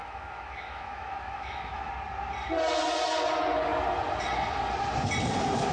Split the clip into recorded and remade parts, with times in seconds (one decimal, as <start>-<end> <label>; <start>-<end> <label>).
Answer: 0.0-1.9 remade; 1.9-5.7 recorded